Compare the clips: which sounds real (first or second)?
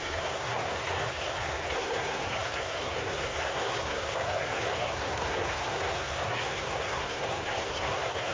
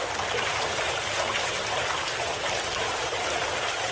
second